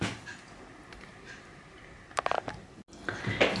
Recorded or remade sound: recorded